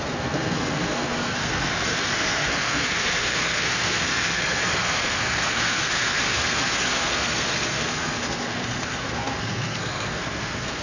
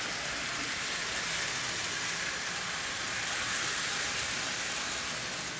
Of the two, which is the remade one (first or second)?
first